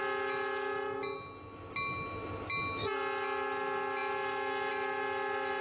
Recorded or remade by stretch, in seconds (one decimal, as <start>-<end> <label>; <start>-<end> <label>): 0.0-5.6 recorded